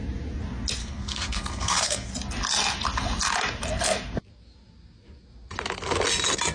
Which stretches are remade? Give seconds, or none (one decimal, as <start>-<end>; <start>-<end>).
0.8-2.1